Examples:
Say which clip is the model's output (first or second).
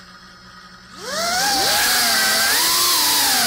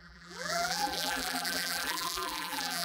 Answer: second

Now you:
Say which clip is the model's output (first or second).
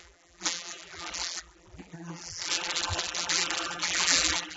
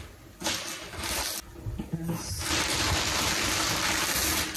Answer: first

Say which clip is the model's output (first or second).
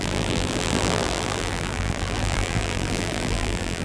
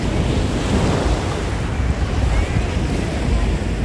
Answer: first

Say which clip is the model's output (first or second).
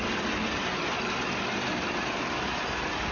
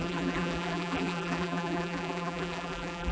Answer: second